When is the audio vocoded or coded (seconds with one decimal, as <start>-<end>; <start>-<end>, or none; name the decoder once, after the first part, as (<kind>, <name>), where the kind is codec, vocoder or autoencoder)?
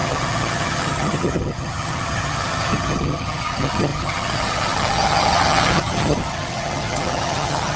0.0-7.8 (vocoder, HiFi-GAN)